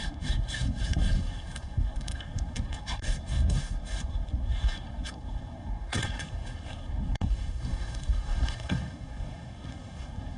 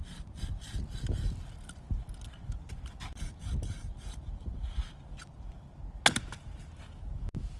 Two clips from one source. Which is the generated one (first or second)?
first